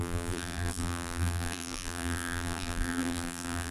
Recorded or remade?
remade